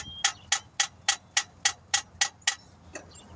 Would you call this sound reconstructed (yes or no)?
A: no